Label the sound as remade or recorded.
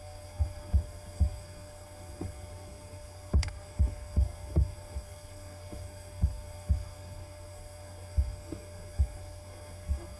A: remade